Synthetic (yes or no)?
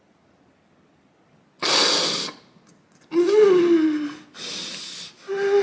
no